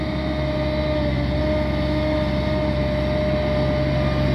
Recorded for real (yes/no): yes